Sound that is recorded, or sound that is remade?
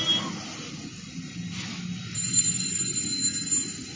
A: recorded